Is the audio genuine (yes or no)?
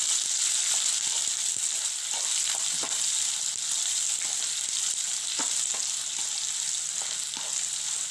yes